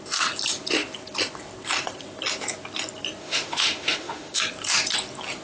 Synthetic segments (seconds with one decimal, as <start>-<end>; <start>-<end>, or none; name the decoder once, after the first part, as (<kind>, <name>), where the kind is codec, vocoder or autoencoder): 3.2-4.4 (autoencoder, DAC-VAE)